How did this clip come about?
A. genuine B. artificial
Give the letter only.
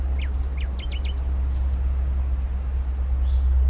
A